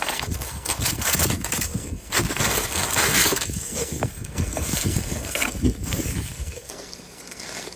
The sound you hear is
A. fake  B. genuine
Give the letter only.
A